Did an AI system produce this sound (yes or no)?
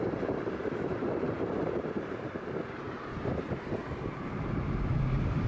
yes